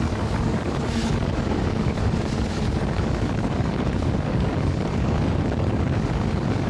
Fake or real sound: fake